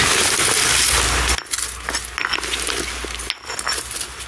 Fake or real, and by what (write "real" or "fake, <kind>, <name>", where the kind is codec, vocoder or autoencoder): real